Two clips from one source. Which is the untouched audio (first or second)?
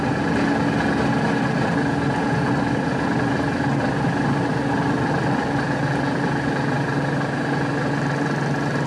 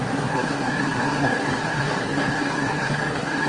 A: first